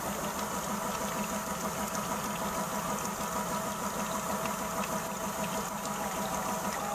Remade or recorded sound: recorded